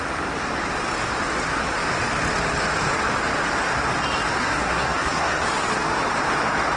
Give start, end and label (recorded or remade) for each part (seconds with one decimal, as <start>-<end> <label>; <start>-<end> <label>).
0.0-4.4 recorded; 4.4-5.4 remade; 5.4-6.8 recorded